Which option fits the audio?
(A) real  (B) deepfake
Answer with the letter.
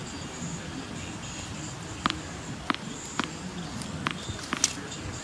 A